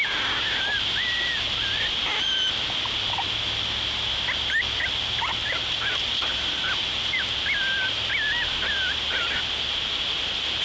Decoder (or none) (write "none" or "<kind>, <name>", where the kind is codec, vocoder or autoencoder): none